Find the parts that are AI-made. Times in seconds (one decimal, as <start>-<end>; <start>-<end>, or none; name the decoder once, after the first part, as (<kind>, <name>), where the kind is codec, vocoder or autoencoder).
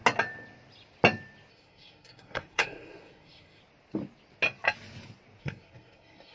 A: 1.5-3.6 (codec, SNAC); 5.4-6.3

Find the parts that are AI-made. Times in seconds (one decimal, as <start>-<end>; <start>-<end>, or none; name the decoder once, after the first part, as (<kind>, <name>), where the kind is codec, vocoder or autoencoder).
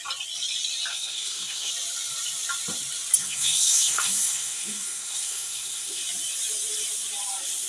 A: 0.9-1.7 (codec, SNAC); 3.2-6.0